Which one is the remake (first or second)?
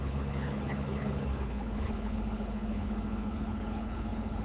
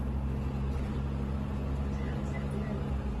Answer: first